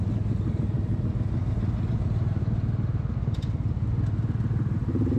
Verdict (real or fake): real